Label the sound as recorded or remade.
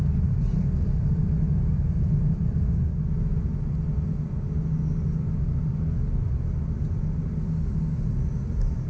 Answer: recorded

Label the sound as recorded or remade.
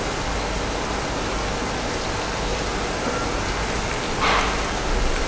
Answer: recorded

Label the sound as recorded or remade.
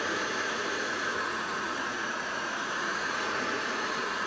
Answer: remade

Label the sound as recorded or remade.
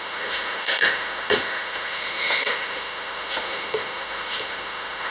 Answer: remade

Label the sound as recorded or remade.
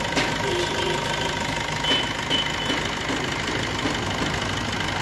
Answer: recorded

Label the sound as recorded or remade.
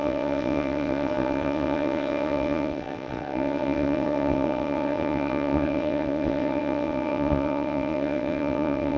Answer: remade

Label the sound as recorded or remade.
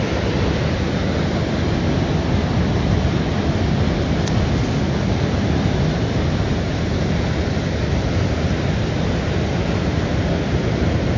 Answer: recorded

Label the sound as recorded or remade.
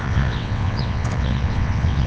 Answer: remade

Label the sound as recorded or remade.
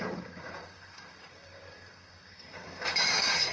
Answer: remade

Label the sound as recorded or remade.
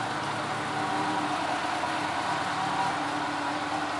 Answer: recorded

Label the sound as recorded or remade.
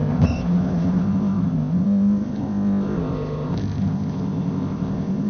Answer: remade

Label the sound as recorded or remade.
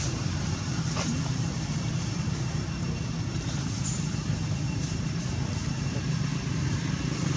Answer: remade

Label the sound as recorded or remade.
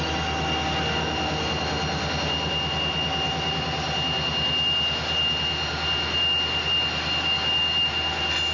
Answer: recorded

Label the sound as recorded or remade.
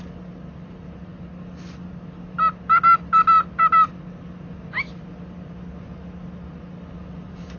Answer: recorded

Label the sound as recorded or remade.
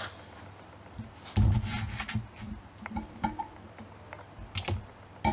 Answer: recorded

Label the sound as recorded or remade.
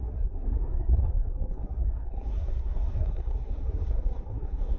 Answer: remade